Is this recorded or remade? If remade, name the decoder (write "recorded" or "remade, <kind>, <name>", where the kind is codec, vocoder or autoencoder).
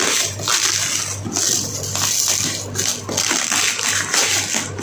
recorded